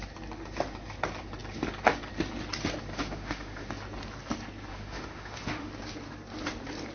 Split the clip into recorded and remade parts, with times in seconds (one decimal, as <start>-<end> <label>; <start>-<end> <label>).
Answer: 0.0-2.9 recorded; 2.9-3.7 remade; 3.7-4.7 recorded; 4.7-5.7 remade; 5.7-6.9 recorded